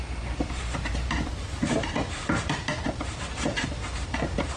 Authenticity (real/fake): fake